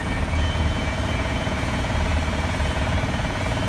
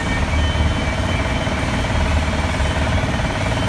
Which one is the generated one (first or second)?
first